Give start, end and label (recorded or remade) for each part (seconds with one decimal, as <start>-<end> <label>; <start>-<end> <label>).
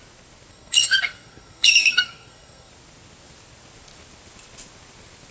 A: 0.0-0.5 recorded; 0.5-2.7 remade; 2.7-5.3 recorded